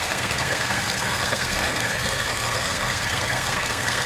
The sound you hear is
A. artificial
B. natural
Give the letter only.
A